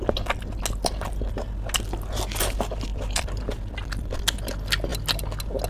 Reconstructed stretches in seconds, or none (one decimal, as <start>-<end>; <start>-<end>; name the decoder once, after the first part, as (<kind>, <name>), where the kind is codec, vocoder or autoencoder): 2.9-3.7 (vocoder, BigVGAN v2)